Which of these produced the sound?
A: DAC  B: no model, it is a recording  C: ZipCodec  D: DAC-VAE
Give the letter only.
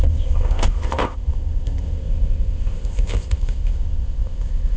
C